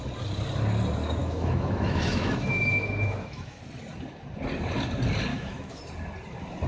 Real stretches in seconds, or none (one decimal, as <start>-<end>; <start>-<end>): 0.0-1.2; 3.6-5.3; 5.8-6.7